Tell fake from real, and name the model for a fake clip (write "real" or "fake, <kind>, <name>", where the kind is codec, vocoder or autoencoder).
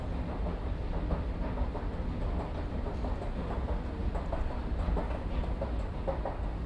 real